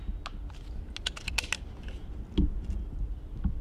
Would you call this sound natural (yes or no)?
yes